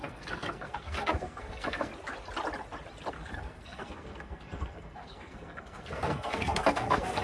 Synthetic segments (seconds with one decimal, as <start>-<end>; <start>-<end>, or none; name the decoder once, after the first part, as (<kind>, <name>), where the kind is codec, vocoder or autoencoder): 0.0-1.9 (codec, SNAC); 3.1-7.2